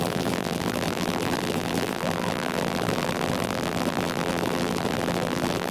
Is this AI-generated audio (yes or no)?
yes